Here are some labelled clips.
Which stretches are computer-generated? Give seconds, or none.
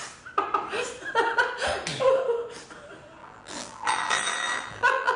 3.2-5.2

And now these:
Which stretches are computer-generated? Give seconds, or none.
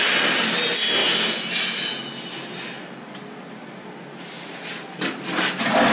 none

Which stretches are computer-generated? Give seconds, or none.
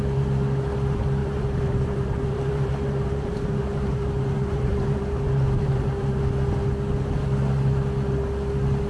1.2-6.2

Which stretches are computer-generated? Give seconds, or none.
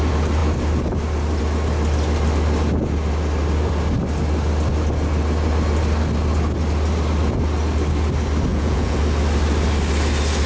8.5-9.0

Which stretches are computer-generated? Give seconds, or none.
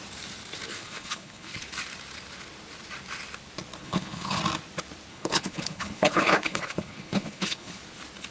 0.7-1.6; 3.8-4.4; 5.1-7.8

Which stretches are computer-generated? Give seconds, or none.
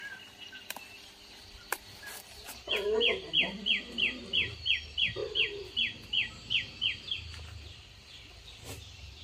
0.0-2.5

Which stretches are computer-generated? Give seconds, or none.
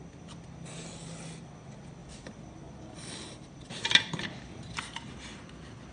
2.0-5.5